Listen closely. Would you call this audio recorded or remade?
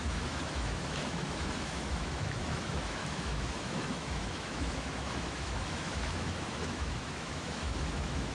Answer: remade